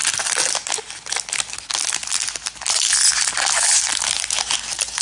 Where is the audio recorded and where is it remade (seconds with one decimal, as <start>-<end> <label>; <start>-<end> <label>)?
0.0-5.0 recorded